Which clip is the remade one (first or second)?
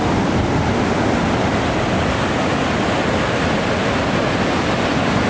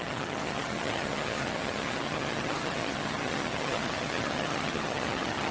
second